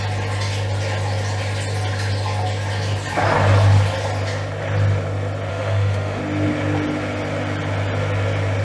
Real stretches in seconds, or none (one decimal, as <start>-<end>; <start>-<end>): 0.0-5.5; 6.2-8.6